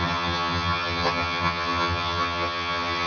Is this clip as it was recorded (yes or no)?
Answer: no